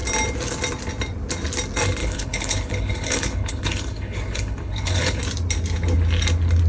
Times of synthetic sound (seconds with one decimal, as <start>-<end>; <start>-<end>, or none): 2.0-5.2